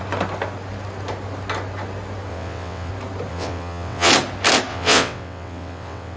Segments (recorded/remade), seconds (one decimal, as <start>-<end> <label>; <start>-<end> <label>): 0.0-2.3 recorded; 2.3-2.9 remade; 2.9-3.3 recorded; 3.3-4.1 remade; 4.1-4.7 recorded; 4.7-6.2 remade